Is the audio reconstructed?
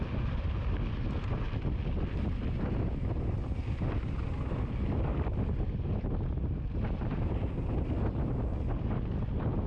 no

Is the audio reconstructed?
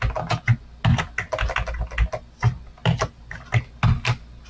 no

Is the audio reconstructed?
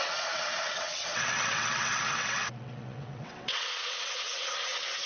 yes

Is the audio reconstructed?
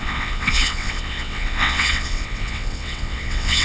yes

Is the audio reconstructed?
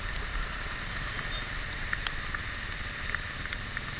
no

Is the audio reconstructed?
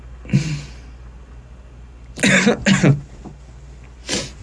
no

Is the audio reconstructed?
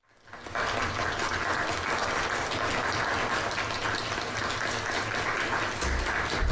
no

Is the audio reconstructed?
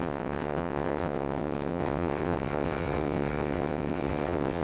yes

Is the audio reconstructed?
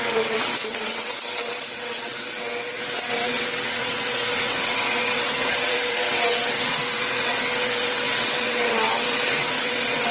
yes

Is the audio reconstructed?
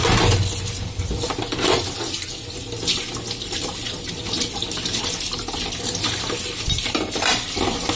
no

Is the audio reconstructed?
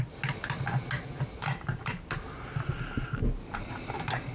no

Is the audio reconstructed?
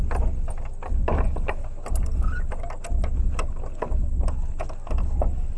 no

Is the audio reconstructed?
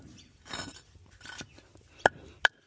no